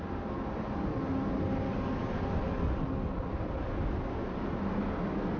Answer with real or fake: real